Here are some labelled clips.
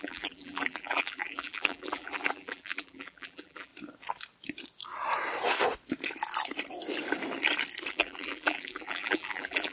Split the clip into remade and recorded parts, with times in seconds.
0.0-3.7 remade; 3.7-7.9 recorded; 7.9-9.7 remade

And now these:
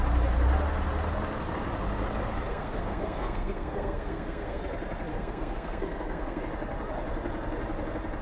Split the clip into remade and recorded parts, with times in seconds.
0.0-2.5 recorded; 2.5-4.6 remade; 4.6-5.1 recorded; 5.1-6.4 remade; 6.4-8.2 recorded

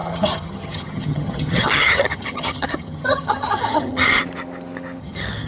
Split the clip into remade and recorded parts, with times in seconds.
0.0-4.2 remade; 4.2-5.0 recorded; 5.0-5.5 remade